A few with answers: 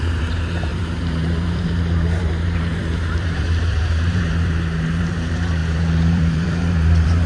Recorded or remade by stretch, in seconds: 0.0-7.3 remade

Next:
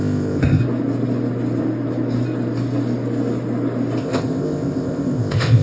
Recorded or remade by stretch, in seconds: 0.0-0.6 remade; 0.6-4.0 recorded; 4.0-5.6 remade

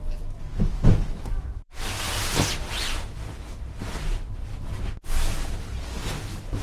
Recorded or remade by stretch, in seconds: 0.0-0.5 recorded; 0.5-1.9 remade; 1.9-6.6 recorded